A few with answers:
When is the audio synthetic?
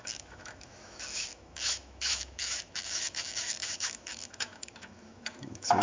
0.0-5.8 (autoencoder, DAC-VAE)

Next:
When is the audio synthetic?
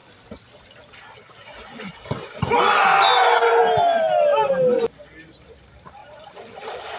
6.0-7.0 (vocoder, BigVGAN v2)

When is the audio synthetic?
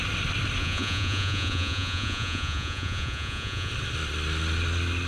0.6-3.7 (vocoder, Vocos)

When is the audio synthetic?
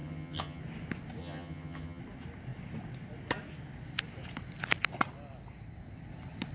0.0-0.6 (vocoder, HiFi-GAN); 1.2-2.0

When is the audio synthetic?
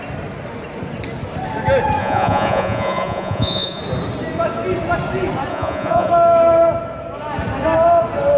2.0-3.8 (vocoder, Vocos); 5.5-6.1